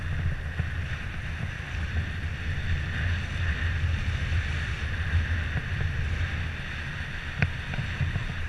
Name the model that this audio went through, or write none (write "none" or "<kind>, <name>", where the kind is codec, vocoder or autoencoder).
none